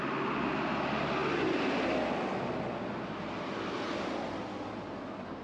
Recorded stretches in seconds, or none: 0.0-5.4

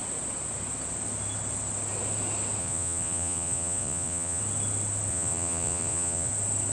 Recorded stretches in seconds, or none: 0.0-2.6; 4.4-5.1; 6.3-6.7